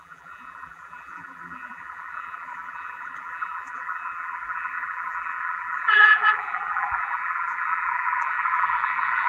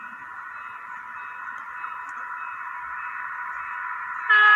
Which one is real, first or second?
second